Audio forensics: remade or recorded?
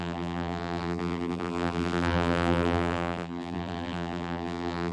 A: remade